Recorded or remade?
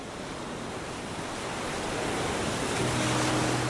recorded